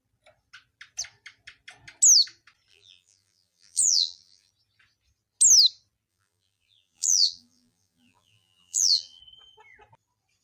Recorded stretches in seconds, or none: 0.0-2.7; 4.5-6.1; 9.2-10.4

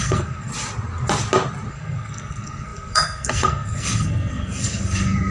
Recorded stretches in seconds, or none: 0.5-1.7